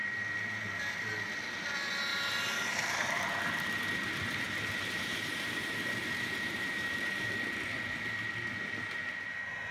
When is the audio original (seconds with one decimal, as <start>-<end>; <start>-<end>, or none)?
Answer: 0.0-2.1; 7.3-9.7